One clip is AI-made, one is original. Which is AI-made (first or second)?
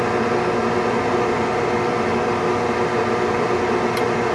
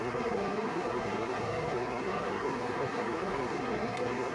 second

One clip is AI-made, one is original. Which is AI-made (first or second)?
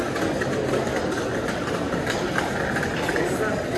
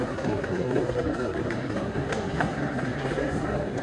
second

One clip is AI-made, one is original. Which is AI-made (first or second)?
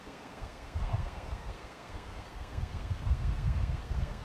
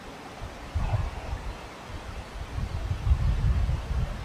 first